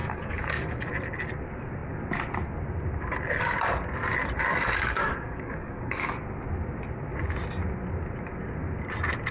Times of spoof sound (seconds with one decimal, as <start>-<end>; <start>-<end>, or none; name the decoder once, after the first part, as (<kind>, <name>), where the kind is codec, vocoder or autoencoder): 0.0-0.7 (codec, DAC); 4.5-6.1